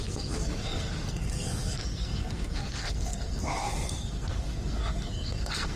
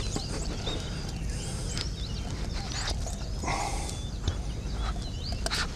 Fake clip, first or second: first